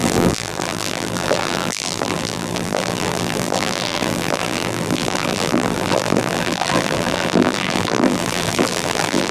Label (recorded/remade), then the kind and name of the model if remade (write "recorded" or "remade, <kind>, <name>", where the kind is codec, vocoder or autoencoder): remade, vocoder, BigVGAN v2